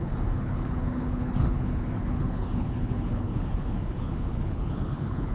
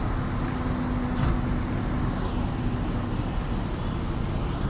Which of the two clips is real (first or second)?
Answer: second